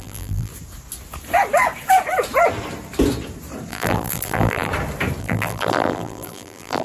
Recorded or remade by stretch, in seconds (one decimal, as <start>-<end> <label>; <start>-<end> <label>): 0.0-0.5 remade; 0.5-3.7 recorded; 3.7-4.7 remade; 4.7-5.2 recorded; 5.2-6.8 remade